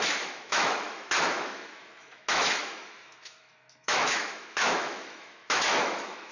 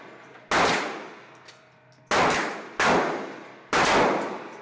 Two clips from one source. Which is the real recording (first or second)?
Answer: second